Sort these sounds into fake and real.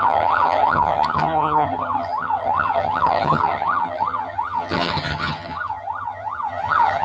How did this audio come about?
fake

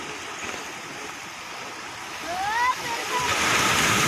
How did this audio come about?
real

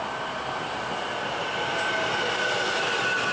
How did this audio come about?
real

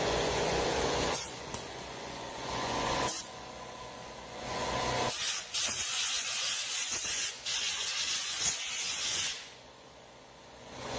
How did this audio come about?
fake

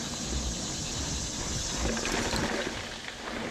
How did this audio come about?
real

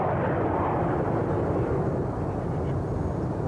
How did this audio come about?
real